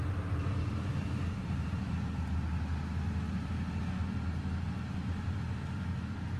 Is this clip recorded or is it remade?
recorded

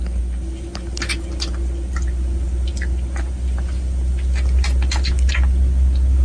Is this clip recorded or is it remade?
recorded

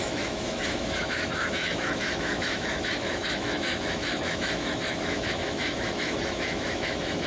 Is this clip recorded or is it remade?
remade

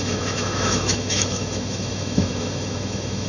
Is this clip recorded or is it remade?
remade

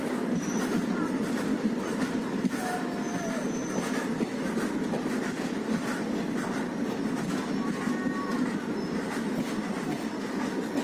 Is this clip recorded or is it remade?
recorded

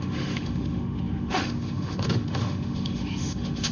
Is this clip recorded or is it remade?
remade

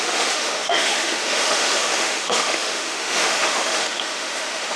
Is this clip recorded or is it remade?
remade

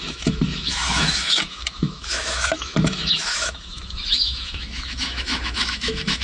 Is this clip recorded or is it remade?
remade